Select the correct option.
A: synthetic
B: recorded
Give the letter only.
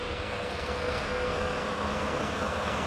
A